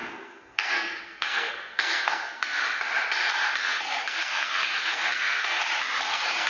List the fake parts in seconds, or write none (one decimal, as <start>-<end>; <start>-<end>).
0.0-2.6; 3.6-5.6; 6.1-6.5